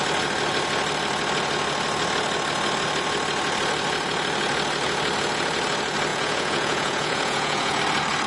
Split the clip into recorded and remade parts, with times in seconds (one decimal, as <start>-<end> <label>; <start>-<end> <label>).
0.0-6.1 recorded; 6.1-7.8 remade; 7.8-8.3 recorded